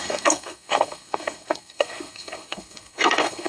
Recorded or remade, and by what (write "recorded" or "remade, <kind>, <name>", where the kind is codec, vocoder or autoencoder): remade, codec, SNAC